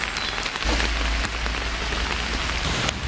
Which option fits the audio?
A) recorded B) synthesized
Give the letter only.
A